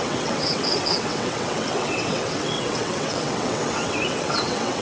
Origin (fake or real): fake